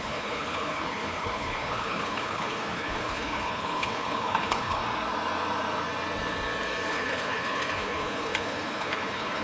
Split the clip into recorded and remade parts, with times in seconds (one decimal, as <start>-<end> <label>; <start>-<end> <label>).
0.0-4.8 remade; 4.8-6.9 recorded; 6.9-9.4 remade